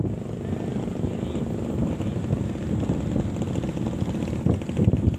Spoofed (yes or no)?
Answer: no